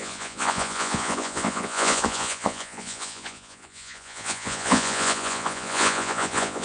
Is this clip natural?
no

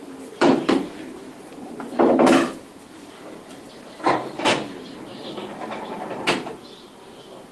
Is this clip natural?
no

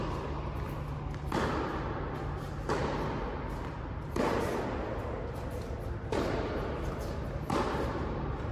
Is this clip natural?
yes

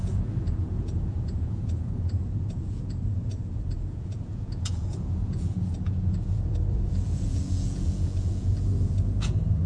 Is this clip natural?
no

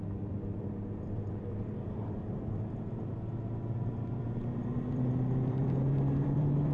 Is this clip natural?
no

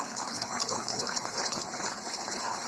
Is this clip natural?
no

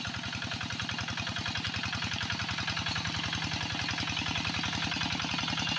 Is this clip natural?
yes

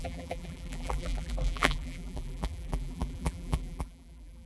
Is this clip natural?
no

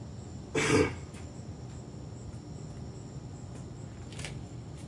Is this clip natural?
yes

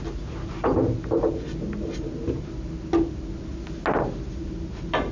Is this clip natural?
yes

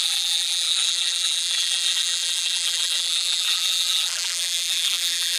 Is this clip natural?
no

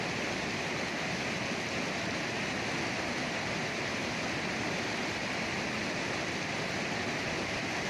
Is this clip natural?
yes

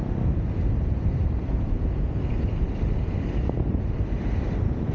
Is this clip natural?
no